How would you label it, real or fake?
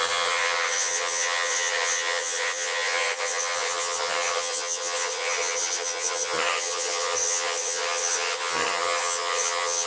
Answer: fake